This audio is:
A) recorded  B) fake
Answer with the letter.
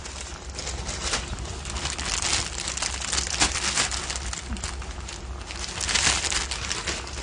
A